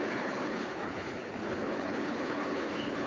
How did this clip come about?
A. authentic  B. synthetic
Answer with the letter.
B